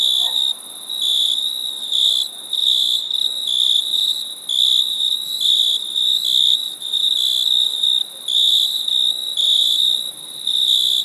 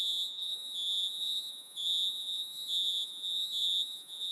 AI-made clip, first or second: second